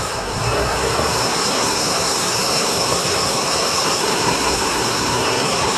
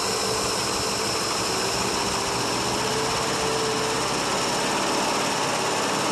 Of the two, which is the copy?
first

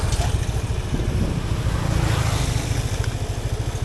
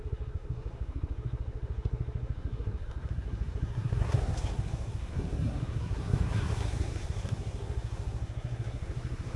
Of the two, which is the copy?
second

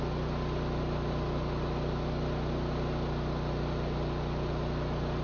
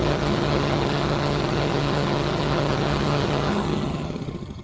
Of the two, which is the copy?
second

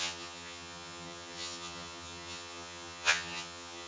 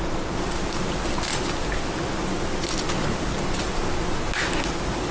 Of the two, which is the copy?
first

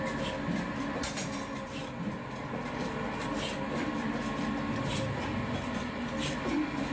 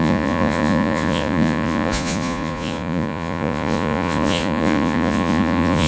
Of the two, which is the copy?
second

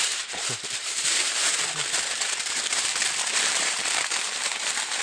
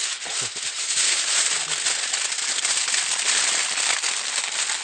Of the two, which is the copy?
first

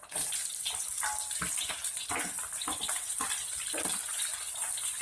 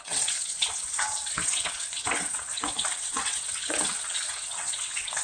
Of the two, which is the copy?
second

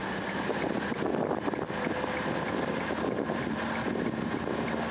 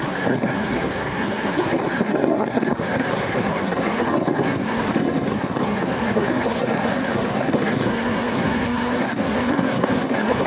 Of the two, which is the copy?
second